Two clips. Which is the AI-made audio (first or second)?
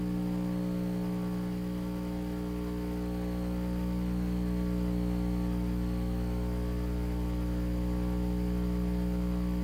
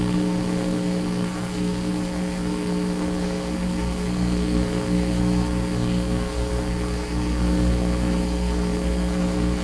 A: second